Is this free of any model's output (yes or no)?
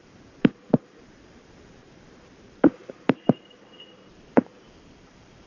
no